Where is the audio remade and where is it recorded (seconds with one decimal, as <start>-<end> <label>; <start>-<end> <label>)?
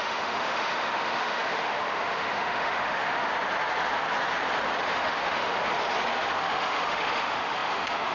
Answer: 0.0-3.3 remade; 3.3-4.8 recorded; 4.8-5.6 remade; 5.6-6.4 recorded; 6.4-8.1 remade